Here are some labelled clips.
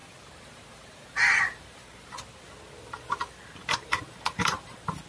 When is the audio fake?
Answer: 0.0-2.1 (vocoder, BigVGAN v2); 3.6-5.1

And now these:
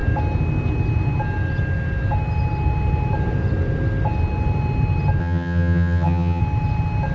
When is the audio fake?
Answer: 5.2-6.4 (vocoder, HiFi-GAN)